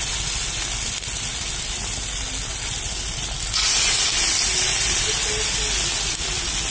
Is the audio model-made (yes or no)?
no